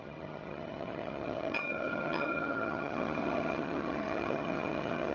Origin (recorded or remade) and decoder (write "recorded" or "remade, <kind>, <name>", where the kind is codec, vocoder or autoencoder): remade, vocoder, HiFi-GAN